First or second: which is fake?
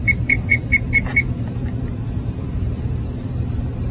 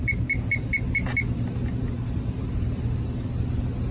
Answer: first